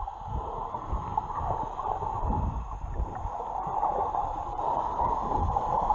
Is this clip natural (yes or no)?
yes